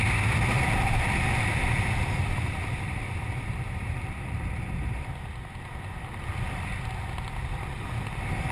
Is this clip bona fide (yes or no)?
no